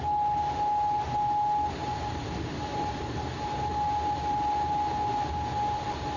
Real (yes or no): yes